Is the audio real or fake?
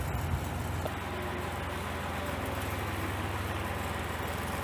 real